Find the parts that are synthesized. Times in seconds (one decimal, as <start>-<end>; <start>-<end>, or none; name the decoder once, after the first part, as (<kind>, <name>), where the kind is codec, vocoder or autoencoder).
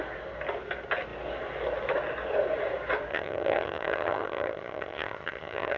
3.1-5.8 (vocoder, HiFi-GAN)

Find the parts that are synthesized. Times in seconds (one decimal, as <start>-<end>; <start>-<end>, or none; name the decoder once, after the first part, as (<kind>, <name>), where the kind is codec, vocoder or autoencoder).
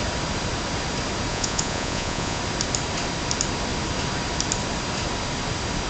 1.3-2.4 (vocoder, Vocos)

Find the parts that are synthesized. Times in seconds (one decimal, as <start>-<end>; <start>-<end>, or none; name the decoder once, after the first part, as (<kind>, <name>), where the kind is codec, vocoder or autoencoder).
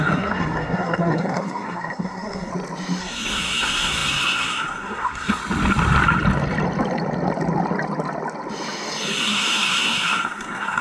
0.0-2.5 (codec, SNAC); 3.0-5.4; 9.2-10.8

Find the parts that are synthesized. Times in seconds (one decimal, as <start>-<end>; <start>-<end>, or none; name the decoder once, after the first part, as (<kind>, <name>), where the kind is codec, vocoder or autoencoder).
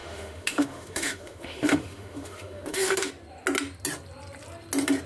0.0-3.1 (autoencoder, DAC-VAE)